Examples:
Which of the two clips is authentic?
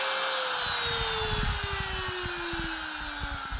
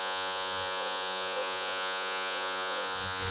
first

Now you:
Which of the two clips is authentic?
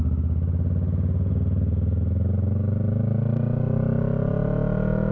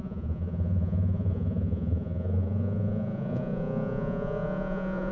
first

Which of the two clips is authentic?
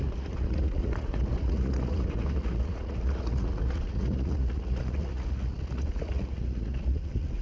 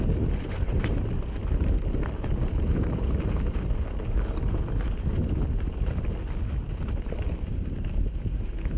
second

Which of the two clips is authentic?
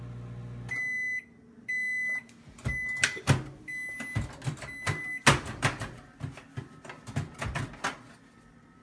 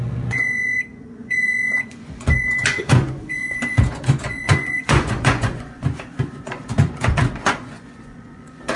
first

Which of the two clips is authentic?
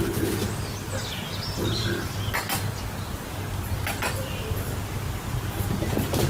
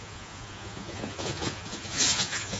first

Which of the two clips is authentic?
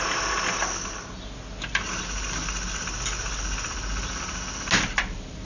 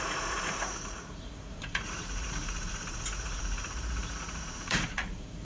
first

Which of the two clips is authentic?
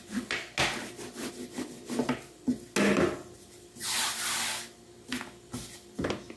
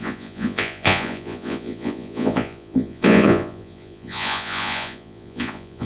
first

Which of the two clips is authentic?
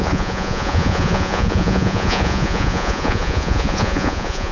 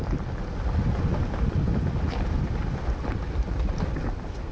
second